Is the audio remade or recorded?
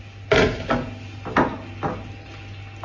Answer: recorded